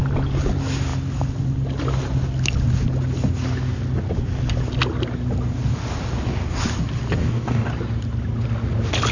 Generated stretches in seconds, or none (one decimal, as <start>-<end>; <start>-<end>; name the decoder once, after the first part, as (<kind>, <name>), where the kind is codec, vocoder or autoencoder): 7.2-7.7 (codec, DAC)